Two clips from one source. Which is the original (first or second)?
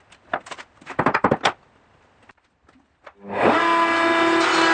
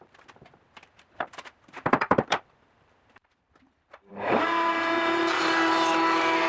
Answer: first